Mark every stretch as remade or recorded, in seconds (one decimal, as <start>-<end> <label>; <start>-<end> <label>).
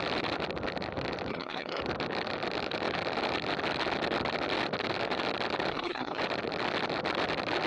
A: 0.0-1.3 recorded; 1.3-1.8 remade; 1.8-5.7 recorded; 5.7-6.2 remade; 6.2-7.7 recorded